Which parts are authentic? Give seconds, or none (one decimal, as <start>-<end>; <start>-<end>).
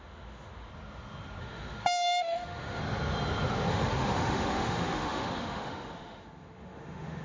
0.7-1.4; 2.8-3.7